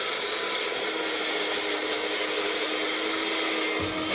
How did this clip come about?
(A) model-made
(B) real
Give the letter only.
B